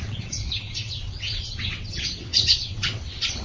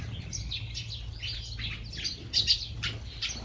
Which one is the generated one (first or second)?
first